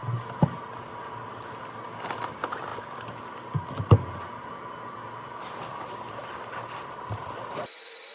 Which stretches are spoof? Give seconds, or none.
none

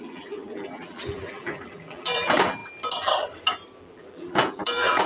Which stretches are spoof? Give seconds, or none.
0.0-2.6 (vocoder, BigVGAN v2); 3.8-5.1

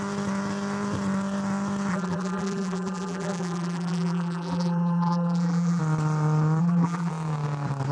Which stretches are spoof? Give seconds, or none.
1.9-5.8 (vocoder, BigVGAN v2); 6.6-7.1

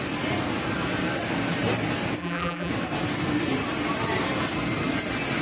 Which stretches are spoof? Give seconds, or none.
2.2-2.7 (vocoder, BigVGAN v2)

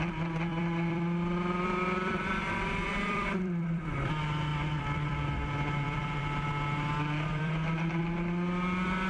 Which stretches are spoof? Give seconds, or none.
0.5-4.1 (vocoder, BigVGAN v2); 4.5-6.2; 7.3-8.0

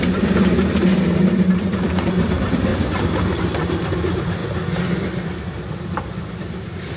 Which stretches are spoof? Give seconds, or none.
0.0-2.7 (vocoder, BigVGAN v2); 3.4-4.4; 5.4-7.0